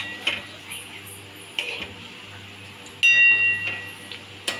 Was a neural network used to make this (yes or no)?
no